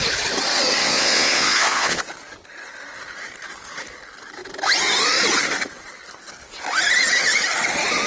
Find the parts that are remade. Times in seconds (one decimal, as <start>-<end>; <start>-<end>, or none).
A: 0.8-2.0